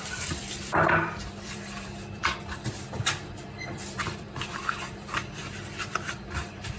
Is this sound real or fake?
fake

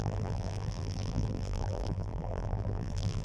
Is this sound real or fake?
fake